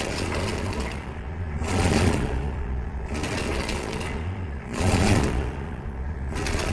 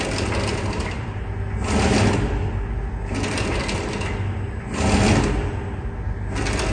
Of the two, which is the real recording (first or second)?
second